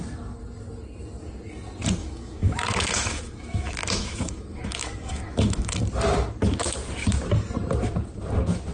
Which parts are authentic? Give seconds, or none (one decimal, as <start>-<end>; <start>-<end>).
0.0-2.0; 5.8-8.7